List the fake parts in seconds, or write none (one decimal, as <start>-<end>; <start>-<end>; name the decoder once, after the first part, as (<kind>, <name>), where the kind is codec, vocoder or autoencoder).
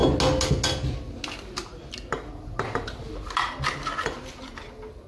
none